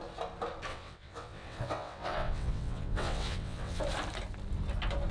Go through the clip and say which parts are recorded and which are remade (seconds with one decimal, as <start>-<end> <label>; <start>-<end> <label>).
0.0-0.7 recorded; 0.7-3.8 remade; 3.8-5.1 recorded